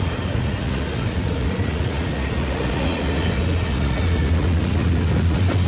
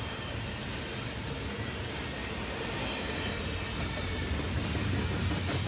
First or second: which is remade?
first